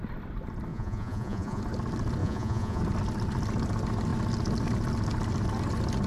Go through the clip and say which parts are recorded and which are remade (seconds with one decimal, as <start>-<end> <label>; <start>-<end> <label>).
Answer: 0.0-0.7 recorded; 0.7-1.6 remade; 1.6-2.2 recorded; 2.2-2.8 remade; 2.8-6.1 recorded